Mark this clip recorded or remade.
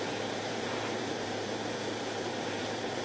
remade